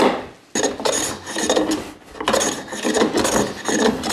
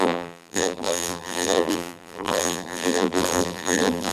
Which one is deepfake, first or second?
second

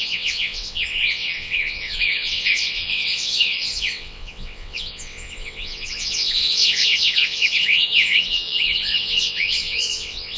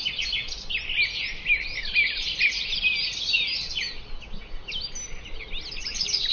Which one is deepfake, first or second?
first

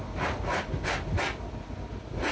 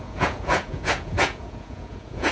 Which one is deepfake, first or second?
second